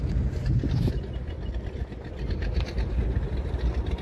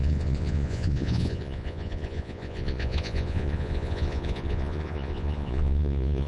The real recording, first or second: first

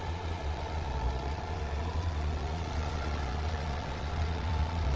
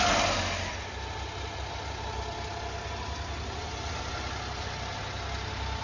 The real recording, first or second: second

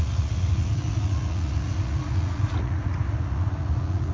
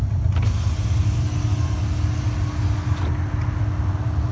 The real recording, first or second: second